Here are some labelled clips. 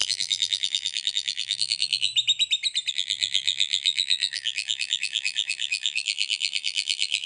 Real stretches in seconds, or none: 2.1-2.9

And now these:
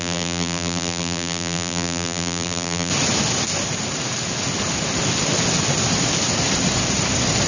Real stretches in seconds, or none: 2.9-7.5

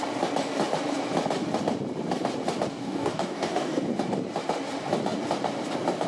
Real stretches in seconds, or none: 0.0-2.7; 3.8-6.1

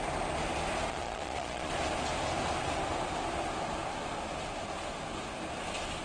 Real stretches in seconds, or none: 0.0-0.9; 1.7-6.0

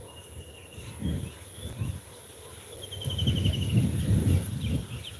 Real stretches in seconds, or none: 0.0-5.2

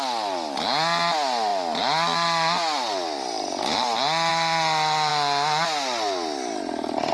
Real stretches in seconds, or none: 0.0-7.1

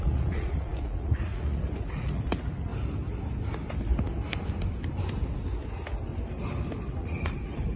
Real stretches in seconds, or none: 2.7-6.9